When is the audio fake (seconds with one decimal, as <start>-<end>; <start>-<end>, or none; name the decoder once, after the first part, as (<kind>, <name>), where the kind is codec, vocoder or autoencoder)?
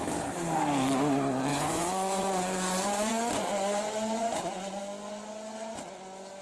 1.5-4.8 (vocoder, Vocos)